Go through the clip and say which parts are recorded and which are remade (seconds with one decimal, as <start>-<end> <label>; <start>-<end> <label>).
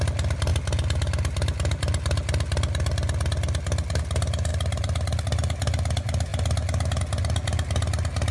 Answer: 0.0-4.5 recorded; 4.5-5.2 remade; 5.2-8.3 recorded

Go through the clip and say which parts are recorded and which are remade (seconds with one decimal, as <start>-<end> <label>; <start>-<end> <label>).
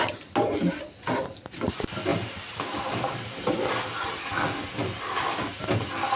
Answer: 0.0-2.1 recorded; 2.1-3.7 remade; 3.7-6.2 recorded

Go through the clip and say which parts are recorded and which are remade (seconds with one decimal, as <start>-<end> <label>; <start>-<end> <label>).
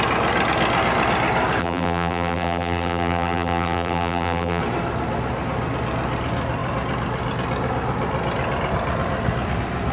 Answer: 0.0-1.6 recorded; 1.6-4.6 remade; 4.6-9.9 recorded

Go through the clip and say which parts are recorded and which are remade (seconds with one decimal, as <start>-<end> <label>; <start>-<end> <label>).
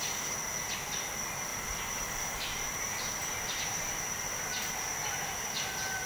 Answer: 0.0-1.5 recorded; 1.5-4.7 remade; 4.7-6.1 recorded